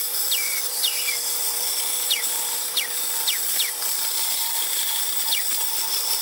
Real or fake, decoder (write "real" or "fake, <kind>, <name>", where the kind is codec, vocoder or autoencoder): fake, vocoder, BigVGAN v2